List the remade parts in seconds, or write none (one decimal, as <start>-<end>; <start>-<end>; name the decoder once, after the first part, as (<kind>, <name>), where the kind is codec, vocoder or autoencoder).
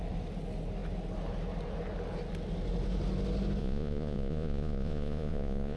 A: 3.6-5.8 (vocoder, Vocos)